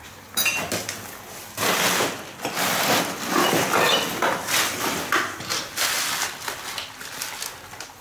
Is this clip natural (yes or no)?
yes